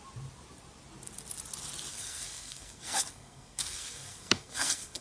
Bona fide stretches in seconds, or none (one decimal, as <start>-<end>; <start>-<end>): 0.0-1.9